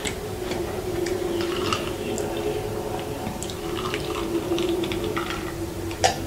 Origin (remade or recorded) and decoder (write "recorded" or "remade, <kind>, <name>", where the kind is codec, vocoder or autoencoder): remade, vocoder, BigVGAN v2